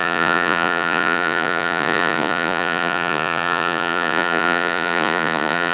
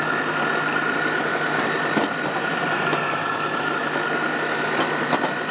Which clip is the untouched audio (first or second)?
second